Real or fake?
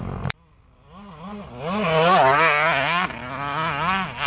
real